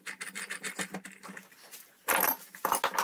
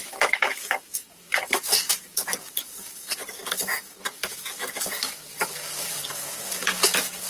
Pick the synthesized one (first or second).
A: second